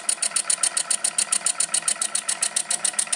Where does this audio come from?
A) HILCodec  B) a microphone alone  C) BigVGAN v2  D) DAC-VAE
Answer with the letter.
B